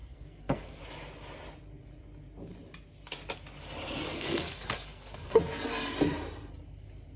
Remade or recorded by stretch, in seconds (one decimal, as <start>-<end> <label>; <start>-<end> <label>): 0.0-0.8 remade; 0.8-4.1 recorded; 4.1-5.4 remade; 5.4-7.2 recorded